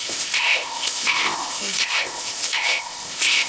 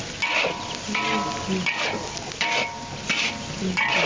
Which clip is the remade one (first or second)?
first